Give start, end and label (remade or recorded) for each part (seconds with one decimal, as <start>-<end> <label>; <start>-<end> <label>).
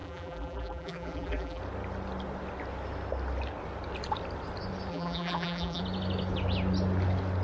0.0-1.6 remade; 1.6-4.9 recorded; 4.9-5.8 remade; 5.8-7.4 recorded